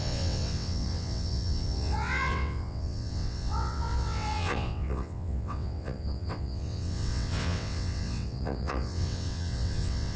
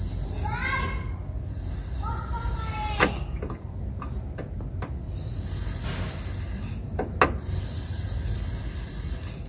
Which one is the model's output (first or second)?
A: first